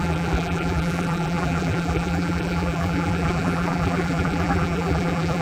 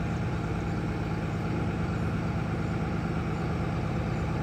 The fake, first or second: first